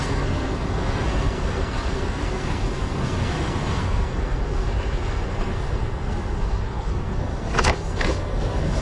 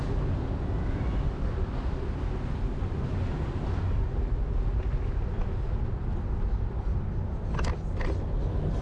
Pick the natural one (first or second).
second